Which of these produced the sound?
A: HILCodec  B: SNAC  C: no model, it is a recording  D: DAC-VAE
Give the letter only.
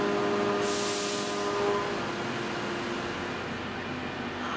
C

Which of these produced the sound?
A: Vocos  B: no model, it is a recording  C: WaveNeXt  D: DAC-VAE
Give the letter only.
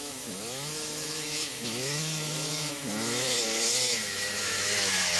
D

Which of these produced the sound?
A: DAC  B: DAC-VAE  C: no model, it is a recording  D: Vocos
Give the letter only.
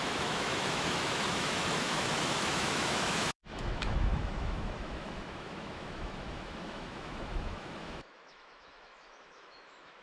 B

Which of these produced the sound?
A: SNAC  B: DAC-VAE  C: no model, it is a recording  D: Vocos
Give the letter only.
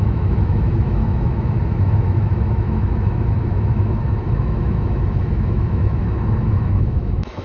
B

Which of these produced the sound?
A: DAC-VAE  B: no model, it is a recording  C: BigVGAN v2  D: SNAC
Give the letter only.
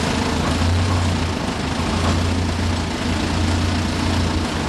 B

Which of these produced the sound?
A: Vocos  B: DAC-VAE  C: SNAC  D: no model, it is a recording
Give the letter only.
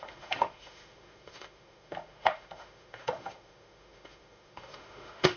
B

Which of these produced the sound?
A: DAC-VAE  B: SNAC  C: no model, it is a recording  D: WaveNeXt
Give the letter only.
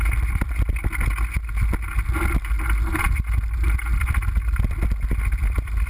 C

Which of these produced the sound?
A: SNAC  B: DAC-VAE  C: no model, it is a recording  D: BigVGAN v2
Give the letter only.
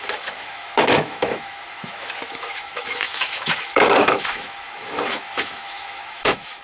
B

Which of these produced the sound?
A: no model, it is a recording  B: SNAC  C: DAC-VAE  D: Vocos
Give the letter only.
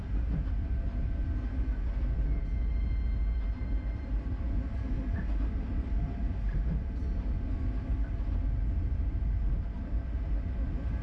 A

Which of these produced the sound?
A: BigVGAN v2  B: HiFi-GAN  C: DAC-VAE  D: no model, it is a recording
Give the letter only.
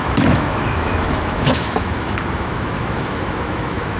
C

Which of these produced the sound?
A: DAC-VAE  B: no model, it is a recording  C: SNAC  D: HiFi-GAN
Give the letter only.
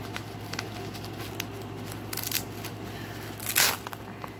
B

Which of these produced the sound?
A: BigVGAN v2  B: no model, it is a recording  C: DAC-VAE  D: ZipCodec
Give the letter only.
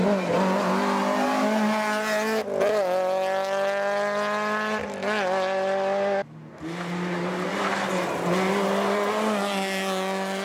B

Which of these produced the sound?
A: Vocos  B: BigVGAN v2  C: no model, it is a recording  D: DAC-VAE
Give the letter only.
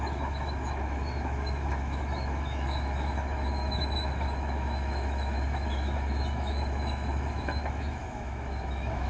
D